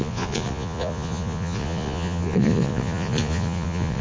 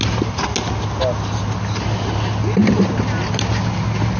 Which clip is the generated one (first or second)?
first